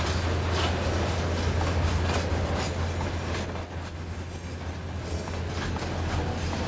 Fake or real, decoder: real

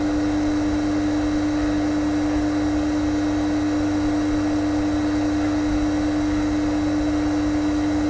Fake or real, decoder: real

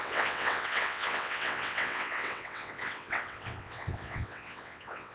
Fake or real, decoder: fake, vocoder, WaveNeXt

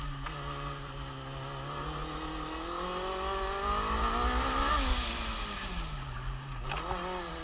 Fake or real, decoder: real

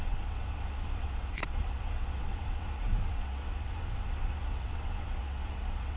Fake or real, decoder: fake, vocoder, WaveNeXt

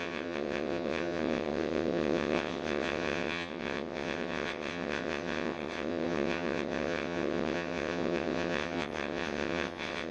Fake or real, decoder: fake, vocoder, WaveNeXt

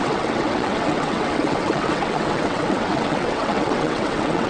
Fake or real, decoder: fake, vocoder, WaveNeXt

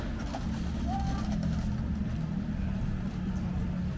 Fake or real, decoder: real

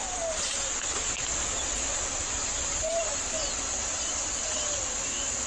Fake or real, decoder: real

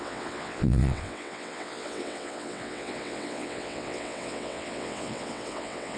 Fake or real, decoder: fake, vocoder, WaveNeXt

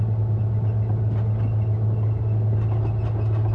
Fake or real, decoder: real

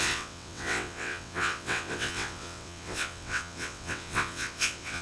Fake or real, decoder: fake, vocoder, WaveNeXt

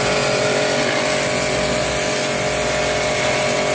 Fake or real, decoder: real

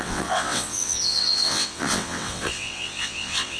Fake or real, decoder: fake, vocoder, WaveNeXt